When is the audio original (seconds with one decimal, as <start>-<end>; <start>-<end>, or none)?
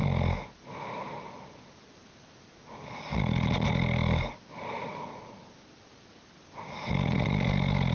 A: 0.0-7.9